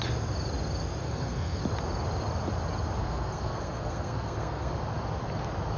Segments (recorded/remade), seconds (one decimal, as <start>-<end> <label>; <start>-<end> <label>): 0.0-1.0 recorded; 1.0-1.6 remade; 1.6-3.0 recorded; 3.0-4.7 remade; 4.7-5.8 recorded